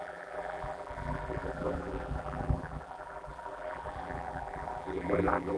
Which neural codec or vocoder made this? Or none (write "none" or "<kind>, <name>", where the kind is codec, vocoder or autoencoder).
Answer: vocoder, BigVGAN v2